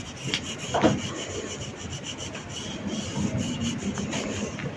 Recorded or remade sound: recorded